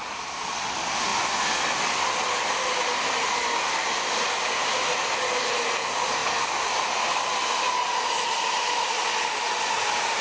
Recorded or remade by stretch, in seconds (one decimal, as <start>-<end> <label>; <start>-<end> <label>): 0.0-10.2 recorded